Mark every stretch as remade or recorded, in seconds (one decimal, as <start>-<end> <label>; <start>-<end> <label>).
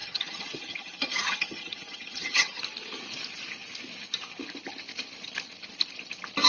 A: 0.0-2.6 remade; 2.6-6.5 recorded